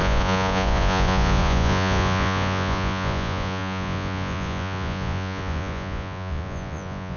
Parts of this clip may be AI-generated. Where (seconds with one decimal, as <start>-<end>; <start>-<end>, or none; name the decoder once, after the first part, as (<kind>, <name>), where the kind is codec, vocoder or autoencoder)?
0.0-7.2 (vocoder, Vocos)